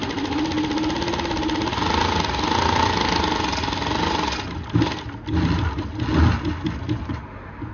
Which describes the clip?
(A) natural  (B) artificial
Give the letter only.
A